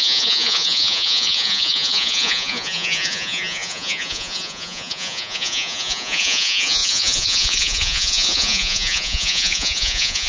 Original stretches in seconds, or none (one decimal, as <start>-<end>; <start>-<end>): none